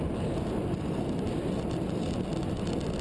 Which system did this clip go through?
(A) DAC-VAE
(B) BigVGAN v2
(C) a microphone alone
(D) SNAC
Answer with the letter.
C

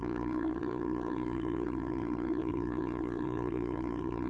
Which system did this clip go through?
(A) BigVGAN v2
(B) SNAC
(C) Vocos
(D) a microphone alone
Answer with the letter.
B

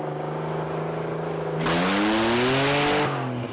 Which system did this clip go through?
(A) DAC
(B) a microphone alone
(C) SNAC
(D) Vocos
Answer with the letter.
B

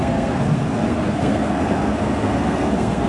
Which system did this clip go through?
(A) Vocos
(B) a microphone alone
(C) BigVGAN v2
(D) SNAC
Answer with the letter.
D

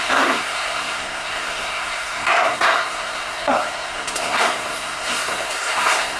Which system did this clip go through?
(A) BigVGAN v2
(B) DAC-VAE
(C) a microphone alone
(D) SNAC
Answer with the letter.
D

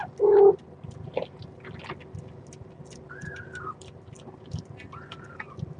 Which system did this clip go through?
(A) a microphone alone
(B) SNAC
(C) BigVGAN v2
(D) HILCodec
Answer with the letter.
A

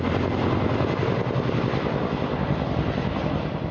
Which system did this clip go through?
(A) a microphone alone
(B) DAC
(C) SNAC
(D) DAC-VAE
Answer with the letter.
A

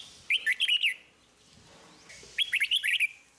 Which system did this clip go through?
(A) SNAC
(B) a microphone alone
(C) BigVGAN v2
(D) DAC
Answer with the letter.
B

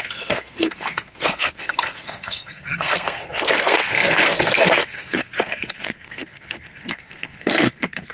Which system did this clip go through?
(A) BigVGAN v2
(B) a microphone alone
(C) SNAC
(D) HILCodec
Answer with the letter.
C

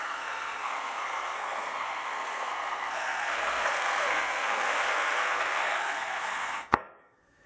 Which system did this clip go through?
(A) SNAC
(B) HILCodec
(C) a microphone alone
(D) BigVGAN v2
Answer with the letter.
A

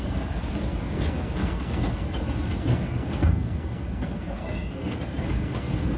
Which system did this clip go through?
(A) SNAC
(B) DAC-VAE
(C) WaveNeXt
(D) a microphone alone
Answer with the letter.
A